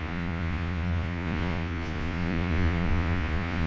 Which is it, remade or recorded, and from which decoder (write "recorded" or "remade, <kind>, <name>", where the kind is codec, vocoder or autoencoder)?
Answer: remade, vocoder, Vocos